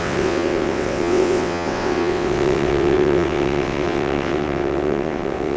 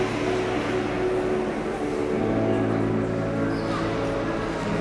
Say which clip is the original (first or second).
second